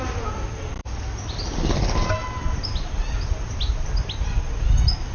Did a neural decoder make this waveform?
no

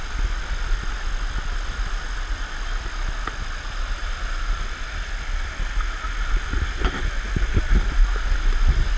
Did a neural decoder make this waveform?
no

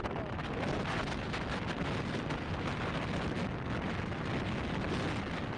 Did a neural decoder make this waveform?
no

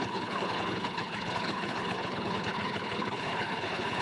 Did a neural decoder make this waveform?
yes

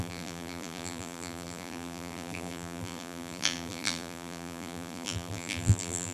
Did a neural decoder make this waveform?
yes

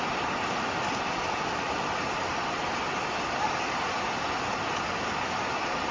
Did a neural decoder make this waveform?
no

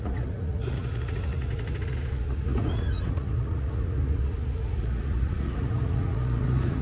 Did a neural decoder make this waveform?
yes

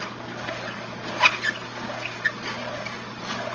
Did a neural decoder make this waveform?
no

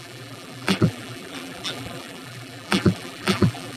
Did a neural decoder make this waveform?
yes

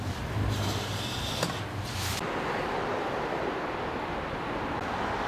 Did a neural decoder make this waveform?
no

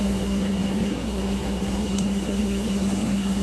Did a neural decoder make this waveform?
yes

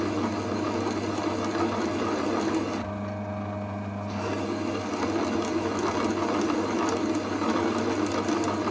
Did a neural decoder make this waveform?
no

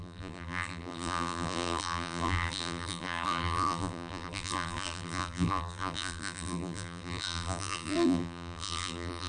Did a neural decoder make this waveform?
yes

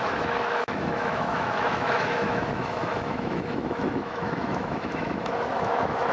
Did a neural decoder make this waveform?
yes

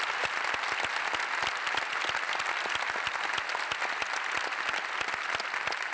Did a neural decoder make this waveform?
no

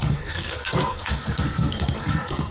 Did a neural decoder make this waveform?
yes